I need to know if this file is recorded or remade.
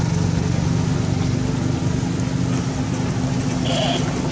recorded